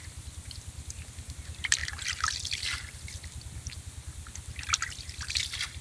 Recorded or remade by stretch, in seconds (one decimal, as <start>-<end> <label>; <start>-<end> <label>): 0.0-5.8 recorded